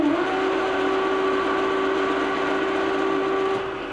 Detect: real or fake real